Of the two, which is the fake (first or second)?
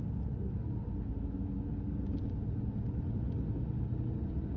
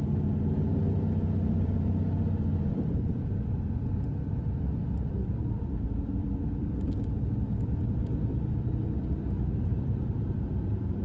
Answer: second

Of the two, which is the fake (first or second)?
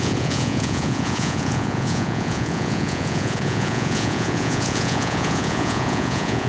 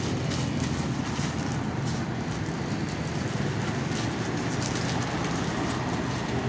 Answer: first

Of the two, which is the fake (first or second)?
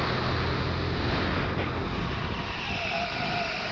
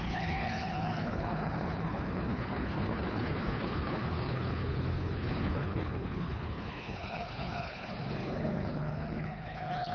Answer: second